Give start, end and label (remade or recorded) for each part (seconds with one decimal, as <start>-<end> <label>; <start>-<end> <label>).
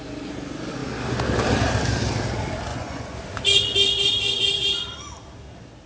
0.0-2.7 recorded; 2.7-3.2 remade; 3.2-5.9 recorded